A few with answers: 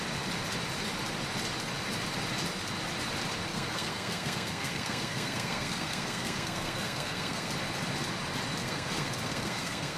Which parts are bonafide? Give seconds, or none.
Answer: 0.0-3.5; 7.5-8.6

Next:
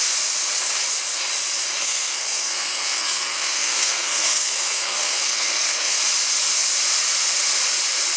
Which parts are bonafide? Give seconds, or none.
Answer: 0.0-1.8; 6.0-8.2

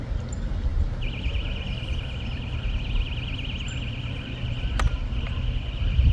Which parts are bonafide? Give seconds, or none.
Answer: 0.0-6.1

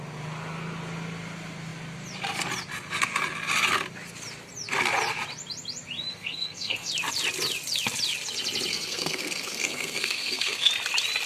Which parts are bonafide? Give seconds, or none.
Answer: 0.0-6.1; 6.9-8.7; 10.7-11.3